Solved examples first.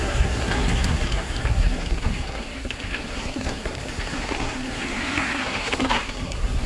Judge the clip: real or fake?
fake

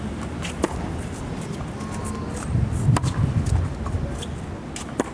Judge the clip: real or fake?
real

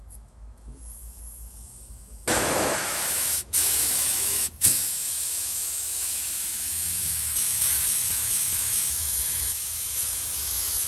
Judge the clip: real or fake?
fake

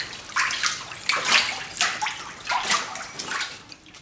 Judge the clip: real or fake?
real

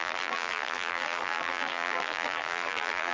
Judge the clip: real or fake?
fake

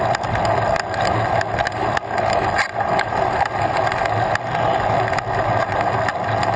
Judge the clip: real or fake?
real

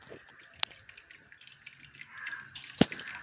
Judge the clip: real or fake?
real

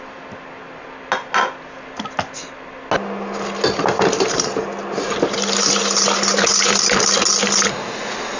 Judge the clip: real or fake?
real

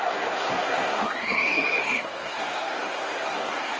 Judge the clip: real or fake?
fake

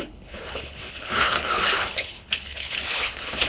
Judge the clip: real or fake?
fake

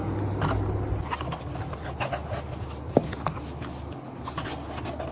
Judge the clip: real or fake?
real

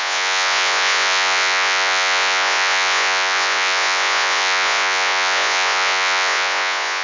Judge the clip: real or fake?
fake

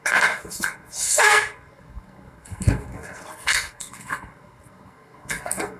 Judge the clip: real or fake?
fake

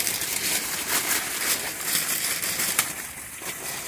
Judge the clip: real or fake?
real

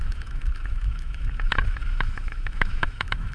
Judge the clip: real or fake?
fake